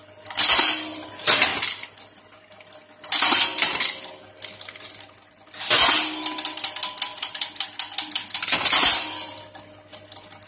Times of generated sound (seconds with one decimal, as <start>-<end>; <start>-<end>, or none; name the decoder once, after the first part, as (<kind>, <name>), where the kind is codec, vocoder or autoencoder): none